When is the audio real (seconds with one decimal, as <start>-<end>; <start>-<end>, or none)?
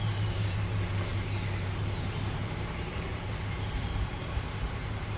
none